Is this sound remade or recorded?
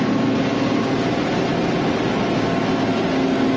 recorded